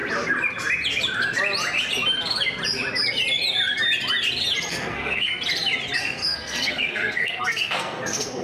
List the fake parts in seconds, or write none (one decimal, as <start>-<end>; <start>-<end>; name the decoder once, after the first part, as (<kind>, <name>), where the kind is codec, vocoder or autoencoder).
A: 4.7-5.3 (codec, SNAC); 6.0-8.4